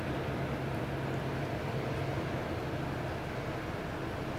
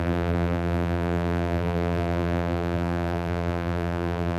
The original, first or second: first